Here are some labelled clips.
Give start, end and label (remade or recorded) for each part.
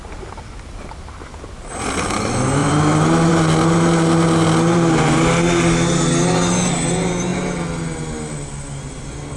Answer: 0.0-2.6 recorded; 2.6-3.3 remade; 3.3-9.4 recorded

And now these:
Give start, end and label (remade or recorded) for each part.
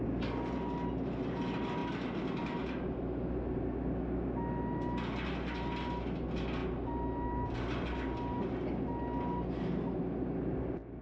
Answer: 0.0-11.0 recorded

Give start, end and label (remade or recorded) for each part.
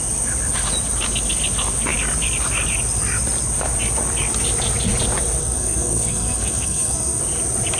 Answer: 0.0-5.4 recorded; 5.4-7.2 remade; 7.2-7.8 recorded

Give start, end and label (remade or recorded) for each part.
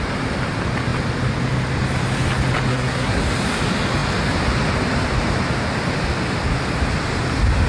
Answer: 0.0-2.7 recorded; 2.7-3.2 remade; 3.2-7.7 recorded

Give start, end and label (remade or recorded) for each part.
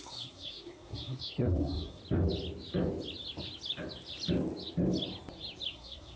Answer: 0.0-2.0 remade; 2.0-5.7 recorded; 5.7-6.2 remade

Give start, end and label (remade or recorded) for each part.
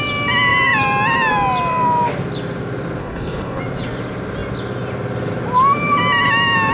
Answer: 0.0-3.0 recorded; 3.0-3.6 remade; 3.6-6.7 recorded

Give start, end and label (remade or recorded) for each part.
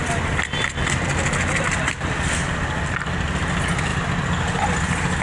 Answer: 0.0-5.2 recorded